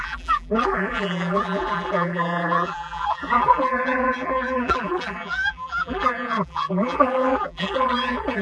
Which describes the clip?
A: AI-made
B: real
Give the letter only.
A